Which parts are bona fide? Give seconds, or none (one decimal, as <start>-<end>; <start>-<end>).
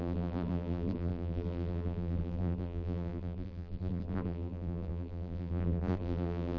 none